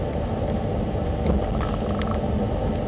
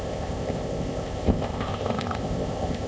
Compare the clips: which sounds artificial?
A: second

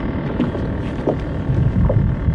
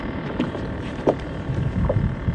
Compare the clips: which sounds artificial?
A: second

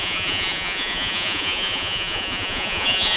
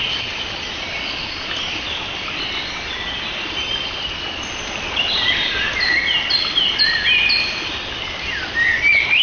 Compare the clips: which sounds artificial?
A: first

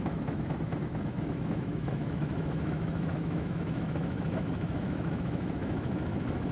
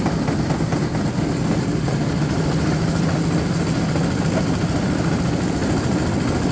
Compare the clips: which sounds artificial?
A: first